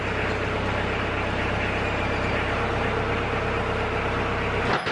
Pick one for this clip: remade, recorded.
recorded